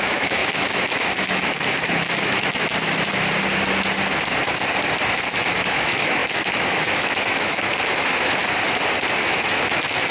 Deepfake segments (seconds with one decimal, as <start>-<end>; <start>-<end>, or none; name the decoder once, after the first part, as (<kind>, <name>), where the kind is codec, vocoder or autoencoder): 0.0-2.7 (autoencoder, DAC-VAE); 5.3-8.4; 9.2-10.1